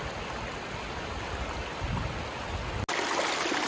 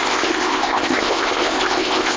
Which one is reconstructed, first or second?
second